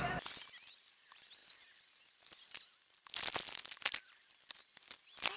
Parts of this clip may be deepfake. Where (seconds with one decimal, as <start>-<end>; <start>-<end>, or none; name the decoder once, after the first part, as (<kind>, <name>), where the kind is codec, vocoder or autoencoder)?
none

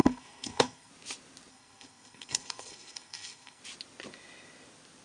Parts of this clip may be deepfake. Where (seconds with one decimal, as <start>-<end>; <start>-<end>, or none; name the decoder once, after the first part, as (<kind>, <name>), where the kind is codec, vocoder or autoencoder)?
0.0-0.9 (codec, SNAC); 1.5-3.6

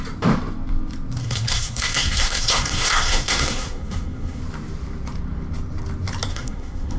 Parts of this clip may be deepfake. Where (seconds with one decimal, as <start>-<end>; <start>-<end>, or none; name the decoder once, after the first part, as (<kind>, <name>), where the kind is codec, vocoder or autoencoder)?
1.2-4.4 (codec, SNAC); 6.3-7.0

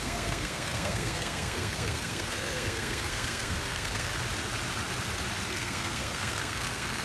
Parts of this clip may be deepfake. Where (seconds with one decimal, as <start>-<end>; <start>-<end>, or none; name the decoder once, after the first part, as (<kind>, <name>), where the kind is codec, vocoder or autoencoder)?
0.0-4.1 (codec, SNAC); 5.5-7.0

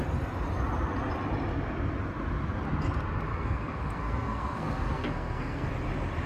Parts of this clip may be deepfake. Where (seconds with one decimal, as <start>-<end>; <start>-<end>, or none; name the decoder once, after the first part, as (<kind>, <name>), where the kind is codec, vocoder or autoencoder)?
3.3-5.7 (codec, SNAC)

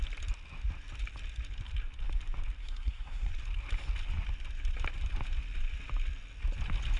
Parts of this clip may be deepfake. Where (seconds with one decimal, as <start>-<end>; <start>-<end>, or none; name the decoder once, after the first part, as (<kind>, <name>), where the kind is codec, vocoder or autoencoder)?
2.6-3.3 (codec, SNAC)